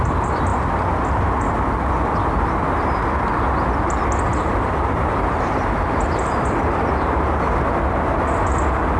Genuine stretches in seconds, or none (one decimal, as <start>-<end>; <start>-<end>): 0.0-4.3; 7.3-9.0